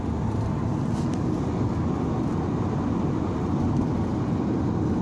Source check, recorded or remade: recorded